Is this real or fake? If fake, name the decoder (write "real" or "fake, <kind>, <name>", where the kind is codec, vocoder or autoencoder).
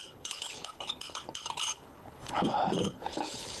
fake, codec, HILCodec